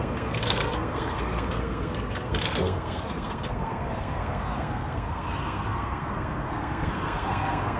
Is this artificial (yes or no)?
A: yes